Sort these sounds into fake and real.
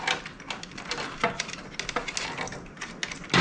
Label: real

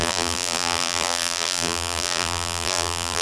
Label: fake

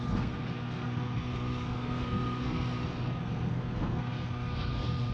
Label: fake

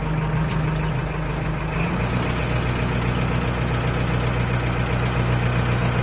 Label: real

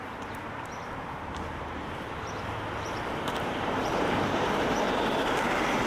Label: fake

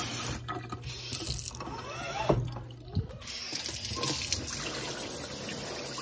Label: real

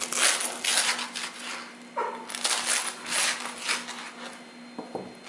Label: real